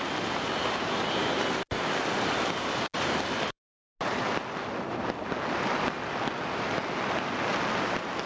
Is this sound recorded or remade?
recorded